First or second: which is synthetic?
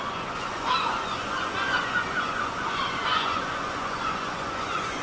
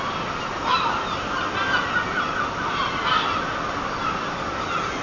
first